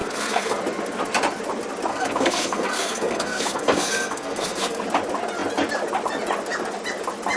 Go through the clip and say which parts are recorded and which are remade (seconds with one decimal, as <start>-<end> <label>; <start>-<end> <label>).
0.0-0.6 remade; 0.6-1.9 recorded; 1.9-4.8 remade; 4.8-7.4 recorded